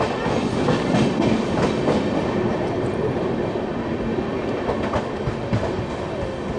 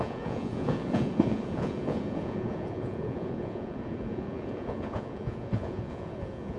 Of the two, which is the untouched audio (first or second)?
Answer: first